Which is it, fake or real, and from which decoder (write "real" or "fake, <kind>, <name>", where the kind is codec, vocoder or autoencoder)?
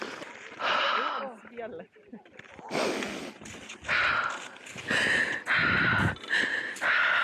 real